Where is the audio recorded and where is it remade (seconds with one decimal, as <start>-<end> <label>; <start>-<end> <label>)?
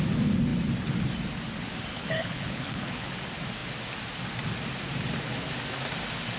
0.0-1.9 recorded; 1.9-3.1 remade; 3.1-6.4 recorded